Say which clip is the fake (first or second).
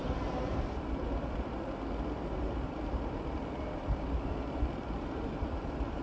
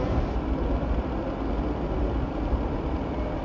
first